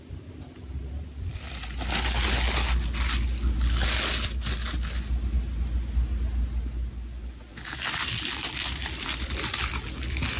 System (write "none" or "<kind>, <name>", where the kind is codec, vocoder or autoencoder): none